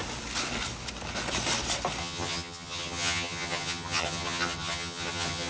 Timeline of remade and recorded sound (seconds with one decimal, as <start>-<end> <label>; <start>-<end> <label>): 0.0-2.0 recorded; 2.0-5.5 remade